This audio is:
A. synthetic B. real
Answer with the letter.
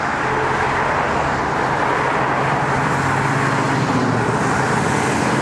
B